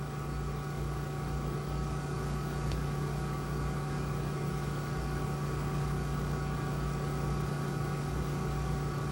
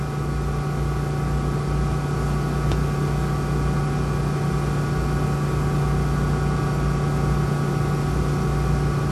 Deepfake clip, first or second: first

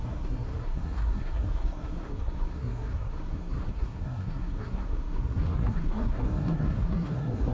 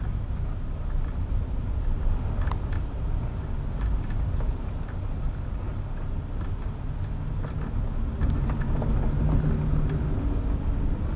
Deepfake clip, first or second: first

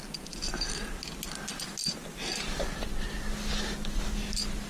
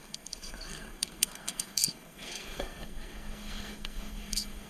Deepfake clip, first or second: second